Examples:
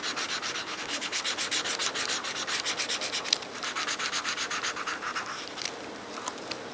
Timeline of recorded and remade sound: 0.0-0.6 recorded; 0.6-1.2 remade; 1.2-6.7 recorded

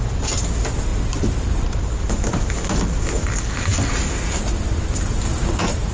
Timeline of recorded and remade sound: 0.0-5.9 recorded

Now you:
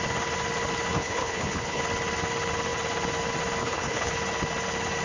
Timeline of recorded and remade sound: 0.0-0.9 recorded; 0.9-1.8 remade; 1.8-3.6 recorded; 3.6-4.1 remade; 4.1-5.0 recorded

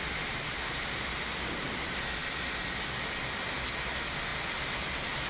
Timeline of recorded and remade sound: 0.0-5.3 recorded

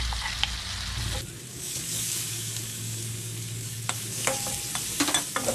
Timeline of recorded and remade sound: 0.0-1.5 recorded; 1.5-4.4 remade; 4.4-5.5 recorded

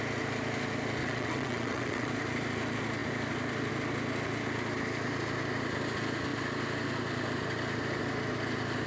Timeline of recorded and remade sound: 0.0-1.0 recorded; 1.0-2.1 remade; 2.1-8.9 recorded

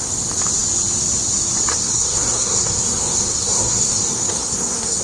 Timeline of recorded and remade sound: 0.0-1.7 recorded; 1.7-5.0 remade

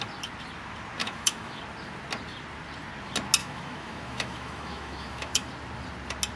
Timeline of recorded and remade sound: 0.0-1.0 recorded; 1.0-1.6 remade; 1.6-3.4 recorded; 3.4-5.5 remade; 5.5-6.4 recorded